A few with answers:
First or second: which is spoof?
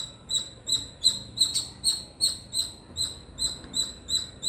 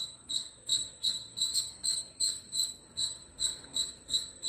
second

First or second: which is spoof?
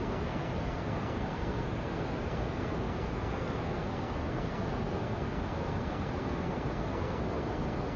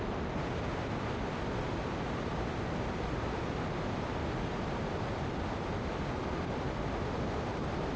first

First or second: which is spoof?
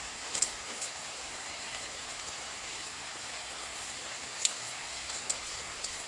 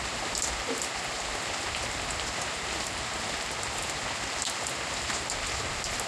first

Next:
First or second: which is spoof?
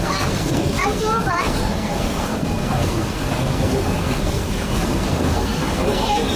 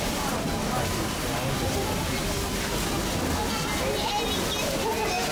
first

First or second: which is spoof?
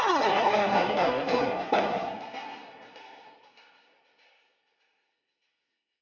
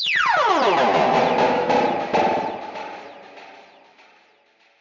first